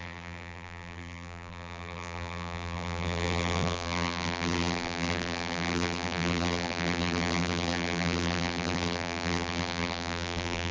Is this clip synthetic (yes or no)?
yes